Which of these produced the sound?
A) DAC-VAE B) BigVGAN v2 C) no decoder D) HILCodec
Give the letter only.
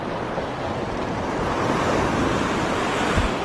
C